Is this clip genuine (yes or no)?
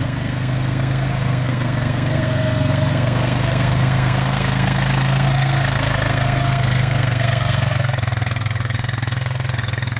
no